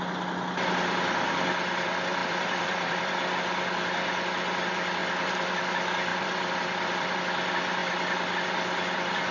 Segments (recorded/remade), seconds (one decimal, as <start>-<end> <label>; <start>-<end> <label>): 0.0-2.2 recorded; 2.2-3.3 remade; 3.3-5.0 recorded; 5.0-5.6 remade; 5.6-6.1 recorded; 6.1-7.2 remade; 7.2-9.3 recorded